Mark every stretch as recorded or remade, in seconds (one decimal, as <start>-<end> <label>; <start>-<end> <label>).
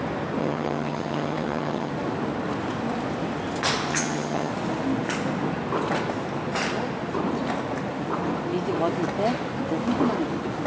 0.0-0.4 recorded; 0.4-1.9 remade; 1.9-3.9 recorded; 3.9-4.5 remade; 4.5-10.7 recorded